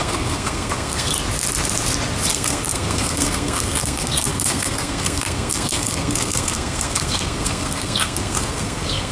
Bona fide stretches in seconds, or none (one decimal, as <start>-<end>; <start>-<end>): 1.1-2.3